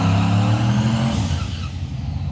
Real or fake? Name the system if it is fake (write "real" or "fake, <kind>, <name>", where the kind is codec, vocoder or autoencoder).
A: real